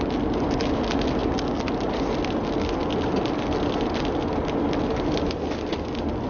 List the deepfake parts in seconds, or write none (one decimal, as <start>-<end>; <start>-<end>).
none